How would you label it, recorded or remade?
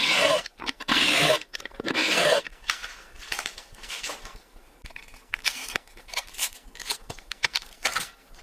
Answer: remade